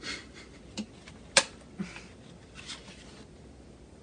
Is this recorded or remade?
recorded